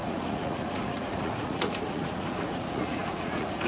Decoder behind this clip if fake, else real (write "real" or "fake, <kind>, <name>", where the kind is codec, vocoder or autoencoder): fake, vocoder, Vocos